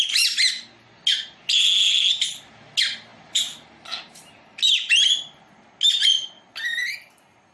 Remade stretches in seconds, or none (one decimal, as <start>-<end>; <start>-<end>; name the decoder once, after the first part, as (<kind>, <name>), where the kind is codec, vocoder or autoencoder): none